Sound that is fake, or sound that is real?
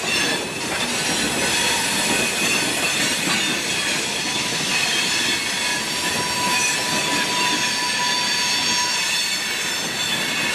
real